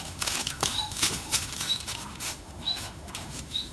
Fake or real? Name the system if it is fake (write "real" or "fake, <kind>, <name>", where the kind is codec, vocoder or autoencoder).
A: fake, autoencoder, DAC-VAE